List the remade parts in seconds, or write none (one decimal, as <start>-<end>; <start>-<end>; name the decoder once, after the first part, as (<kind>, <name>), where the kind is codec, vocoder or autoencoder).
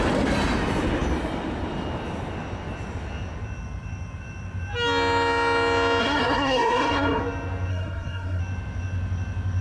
6.0-7.2 (codec, SNAC); 7.7-8.4